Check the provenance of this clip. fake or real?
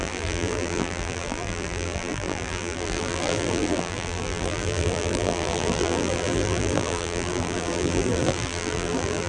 fake